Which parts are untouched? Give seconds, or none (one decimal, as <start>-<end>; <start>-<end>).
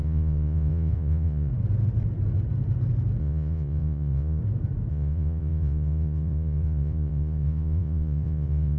1.5-3.2; 4.4-4.9